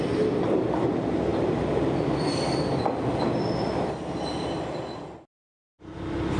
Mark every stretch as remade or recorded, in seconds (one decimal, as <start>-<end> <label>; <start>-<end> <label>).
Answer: 0.0-6.4 recorded